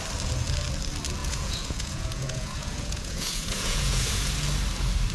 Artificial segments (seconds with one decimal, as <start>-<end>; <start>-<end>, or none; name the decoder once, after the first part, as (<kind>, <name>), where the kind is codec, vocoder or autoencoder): 1.2-4.3 (vocoder, Vocos)

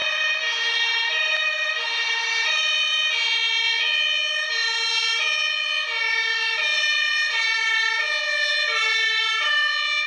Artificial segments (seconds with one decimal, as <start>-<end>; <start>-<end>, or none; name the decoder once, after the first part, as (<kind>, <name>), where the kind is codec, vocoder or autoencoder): 0.0-3.1 (vocoder, BigVGAN v2); 4.3-4.9; 6.7-7.9; 8.8-9.7

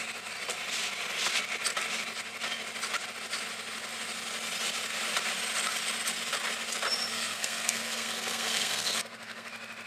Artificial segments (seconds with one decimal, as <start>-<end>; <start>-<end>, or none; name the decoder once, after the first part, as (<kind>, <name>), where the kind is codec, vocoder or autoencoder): 7.1-9.5 (codec, SNAC)

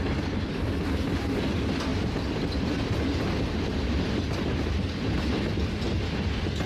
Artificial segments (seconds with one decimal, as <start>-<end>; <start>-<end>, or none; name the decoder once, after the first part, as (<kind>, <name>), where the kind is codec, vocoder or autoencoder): 1.9-5.5 (vocoder, BigVGAN v2)

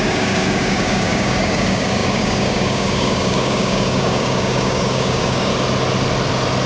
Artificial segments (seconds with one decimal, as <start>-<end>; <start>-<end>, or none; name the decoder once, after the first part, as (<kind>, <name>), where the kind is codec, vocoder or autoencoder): 0.0-5.5 (codec, DAC)

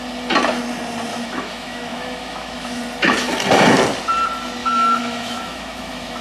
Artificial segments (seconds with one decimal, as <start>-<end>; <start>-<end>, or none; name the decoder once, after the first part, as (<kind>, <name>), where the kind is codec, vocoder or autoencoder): 1.1-2.8 (autoencoder, DAC-VAE); 4.6-6.2

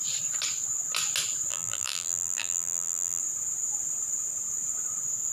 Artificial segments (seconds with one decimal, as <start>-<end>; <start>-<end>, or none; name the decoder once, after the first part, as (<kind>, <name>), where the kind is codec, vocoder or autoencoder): 1.5-3.2 (vocoder, BigVGAN v2)

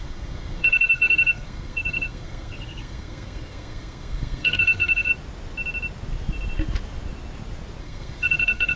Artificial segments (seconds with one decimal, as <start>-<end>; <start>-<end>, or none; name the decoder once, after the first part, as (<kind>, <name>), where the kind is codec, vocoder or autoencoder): 0.0-5.1 (codec, SNAC); 7.8-8.8